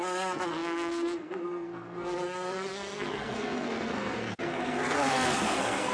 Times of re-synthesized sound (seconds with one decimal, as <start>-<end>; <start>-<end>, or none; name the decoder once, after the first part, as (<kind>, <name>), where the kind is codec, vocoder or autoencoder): 0.0-5.9 (codec, SNAC)